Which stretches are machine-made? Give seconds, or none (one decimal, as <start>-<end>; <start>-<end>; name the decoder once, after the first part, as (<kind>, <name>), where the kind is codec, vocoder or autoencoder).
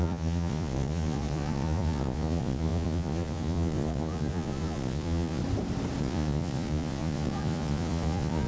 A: 0.0-5.4 (vocoder, Vocos); 6.0-8.5